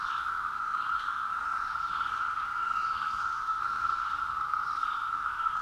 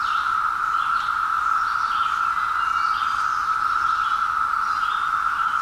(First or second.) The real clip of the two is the second